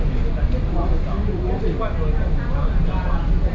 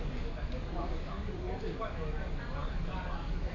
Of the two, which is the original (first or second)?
first